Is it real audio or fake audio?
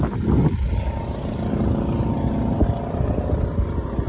real